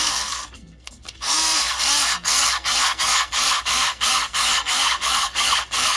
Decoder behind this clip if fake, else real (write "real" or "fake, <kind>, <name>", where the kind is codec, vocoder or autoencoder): fake, codec, SNAC